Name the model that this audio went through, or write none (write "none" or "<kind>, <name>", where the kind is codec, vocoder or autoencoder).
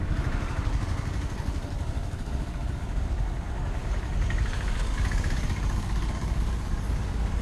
codec, DAC